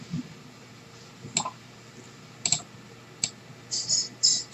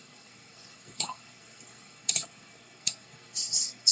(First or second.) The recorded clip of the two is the first